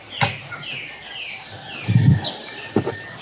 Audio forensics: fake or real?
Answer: real